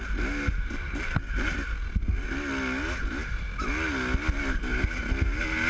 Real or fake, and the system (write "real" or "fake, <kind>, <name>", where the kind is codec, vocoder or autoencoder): real